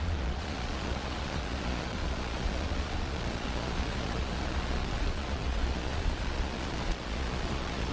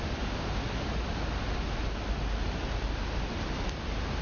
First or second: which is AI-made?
first